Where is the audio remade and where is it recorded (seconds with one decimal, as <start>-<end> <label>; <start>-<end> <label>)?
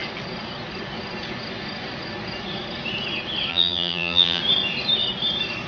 0.0-3.5 recorded; 3.5-4.4 remade; 4.4-5.7 recorded